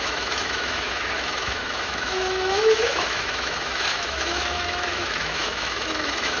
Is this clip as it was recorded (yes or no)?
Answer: no